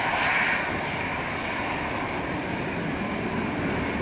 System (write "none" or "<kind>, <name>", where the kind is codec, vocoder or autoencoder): none